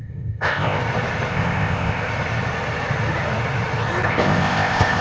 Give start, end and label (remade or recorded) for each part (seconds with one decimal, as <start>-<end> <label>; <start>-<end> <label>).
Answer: 0.0-0.8 remade; 0.8-1.3 recorded; 1.3-2.1 remade; 2.1-4.1 recorded; 4.1-5.0 remade